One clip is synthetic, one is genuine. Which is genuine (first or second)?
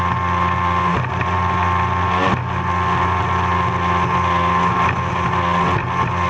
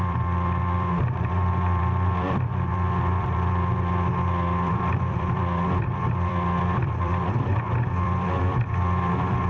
first